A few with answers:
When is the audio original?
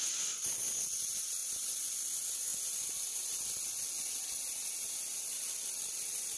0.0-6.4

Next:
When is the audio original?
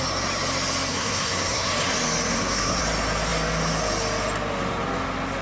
0.0-0.9; 1.7-2.3; 2.8-5.4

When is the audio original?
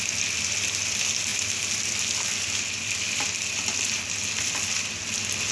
0.0-5.5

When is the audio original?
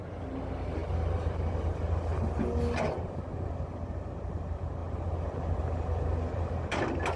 0.0-7.2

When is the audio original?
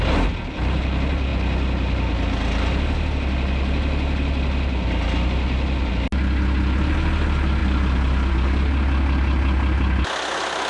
0.0-10.7